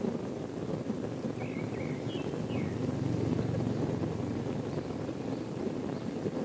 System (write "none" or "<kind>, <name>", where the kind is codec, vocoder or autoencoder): none